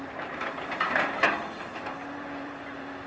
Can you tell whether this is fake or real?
fake